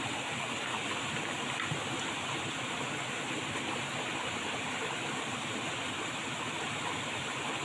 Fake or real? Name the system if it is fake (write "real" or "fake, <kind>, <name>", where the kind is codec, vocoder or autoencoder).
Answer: real